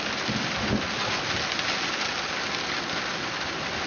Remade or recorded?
recorded